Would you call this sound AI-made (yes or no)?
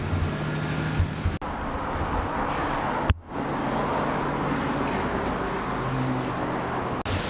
no